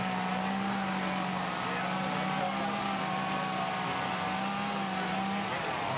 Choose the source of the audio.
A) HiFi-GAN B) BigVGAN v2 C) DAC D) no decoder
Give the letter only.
D